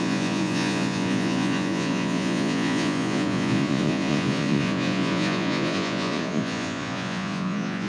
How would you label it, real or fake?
fake